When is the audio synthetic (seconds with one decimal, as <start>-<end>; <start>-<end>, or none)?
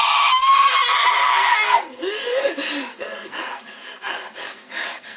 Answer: 1.2-2.5; 2.9-5.2